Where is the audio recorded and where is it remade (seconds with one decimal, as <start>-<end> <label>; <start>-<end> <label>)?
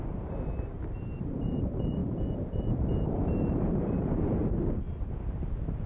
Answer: 0.0-4.4 remade; 4.4-5.9 recorded